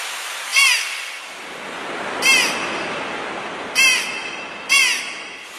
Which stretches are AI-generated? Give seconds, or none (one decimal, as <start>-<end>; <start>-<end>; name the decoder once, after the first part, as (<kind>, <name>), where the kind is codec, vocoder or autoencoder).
0.5-1.0 (vocoder, BigVGAN v2); 2.3-5.0

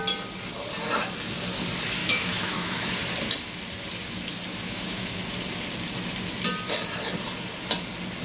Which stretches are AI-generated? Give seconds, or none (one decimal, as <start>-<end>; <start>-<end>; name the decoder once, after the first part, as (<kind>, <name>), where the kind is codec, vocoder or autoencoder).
2.0-2.9 (autoencoder, DAC-VAE); 4.5-5.2

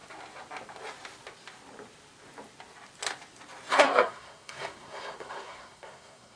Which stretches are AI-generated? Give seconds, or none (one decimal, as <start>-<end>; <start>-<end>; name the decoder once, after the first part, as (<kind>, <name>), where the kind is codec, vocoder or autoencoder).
3.7-6.4 (codec, SNAC)

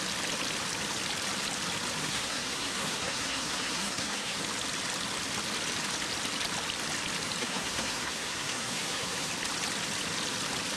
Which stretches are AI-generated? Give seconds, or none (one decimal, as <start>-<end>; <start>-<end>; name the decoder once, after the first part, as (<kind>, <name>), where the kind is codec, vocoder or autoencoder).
2.0-4.4 (codec, SNAC); 7.4-9.3

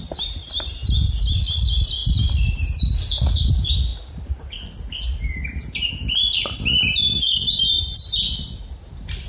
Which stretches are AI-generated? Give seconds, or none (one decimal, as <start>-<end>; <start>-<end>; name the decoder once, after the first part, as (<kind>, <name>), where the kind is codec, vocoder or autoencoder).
0.0-0.8 (vocoder, BigVGAN v2); 1.4-9.3

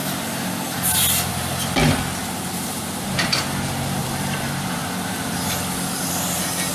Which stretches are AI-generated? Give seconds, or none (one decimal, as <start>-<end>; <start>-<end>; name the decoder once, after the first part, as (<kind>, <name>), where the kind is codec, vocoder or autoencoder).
2.2-3.4 (vocoder, BigVGAN v2); 4.0-4.8

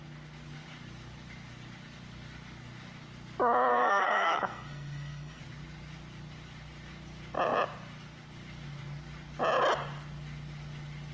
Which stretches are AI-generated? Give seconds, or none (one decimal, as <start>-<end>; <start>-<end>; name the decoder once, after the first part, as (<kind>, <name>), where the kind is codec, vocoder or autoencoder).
3.7-5.4 (codec, SNAC)

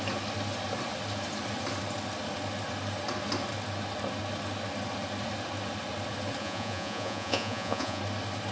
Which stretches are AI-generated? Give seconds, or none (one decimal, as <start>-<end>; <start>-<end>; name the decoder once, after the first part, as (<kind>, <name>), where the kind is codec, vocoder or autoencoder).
6.4-8.0 (vocoder, Vocos)